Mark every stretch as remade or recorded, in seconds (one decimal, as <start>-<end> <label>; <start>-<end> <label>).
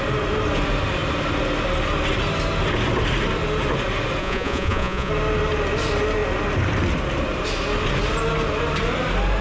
0.0-4.2 recorded; 4.2-5.1 remade; 5.1-9.4 recorded